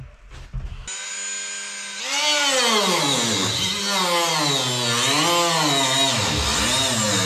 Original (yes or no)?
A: yes